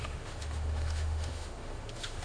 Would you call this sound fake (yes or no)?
yes